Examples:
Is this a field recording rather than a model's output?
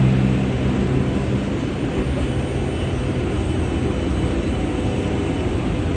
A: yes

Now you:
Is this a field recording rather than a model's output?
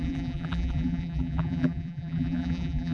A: no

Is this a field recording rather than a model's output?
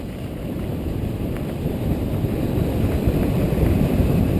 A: no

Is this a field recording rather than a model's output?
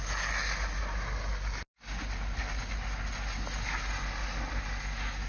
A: yes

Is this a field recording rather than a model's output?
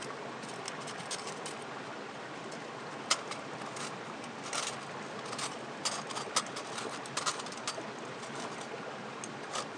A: yes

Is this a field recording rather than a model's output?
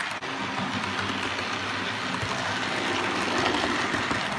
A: yes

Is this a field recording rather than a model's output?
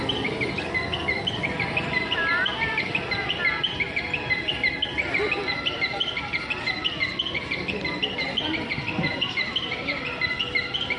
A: yes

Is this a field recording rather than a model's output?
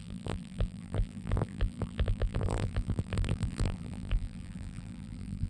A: no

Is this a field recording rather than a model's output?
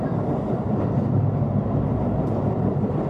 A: no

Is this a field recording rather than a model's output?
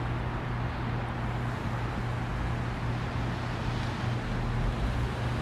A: yes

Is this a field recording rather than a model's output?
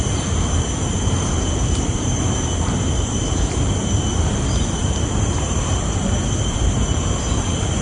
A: no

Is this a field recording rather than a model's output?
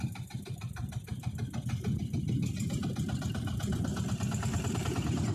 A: no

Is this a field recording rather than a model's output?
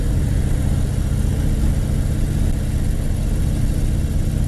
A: yes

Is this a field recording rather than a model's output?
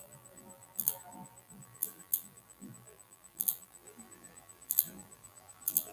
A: no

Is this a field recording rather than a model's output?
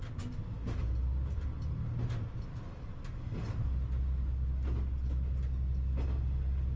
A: yes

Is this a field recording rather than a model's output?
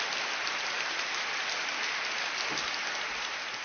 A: yes